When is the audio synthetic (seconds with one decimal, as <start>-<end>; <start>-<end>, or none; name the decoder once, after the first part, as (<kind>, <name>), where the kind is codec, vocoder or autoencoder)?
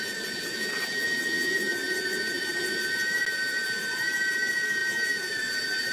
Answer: none